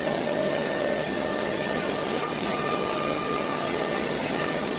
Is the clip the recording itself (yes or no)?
no